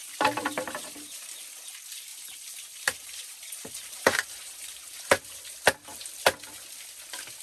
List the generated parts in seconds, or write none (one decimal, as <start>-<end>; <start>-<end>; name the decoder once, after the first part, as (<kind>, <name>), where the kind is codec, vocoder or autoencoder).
0.0-1.3 (vocoder, BigVGAN v2); 2.1-5.2